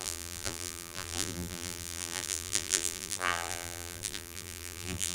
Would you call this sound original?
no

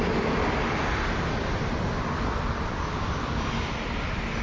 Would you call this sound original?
no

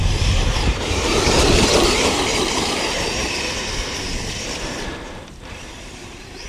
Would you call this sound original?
no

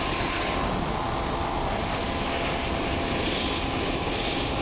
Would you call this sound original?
yes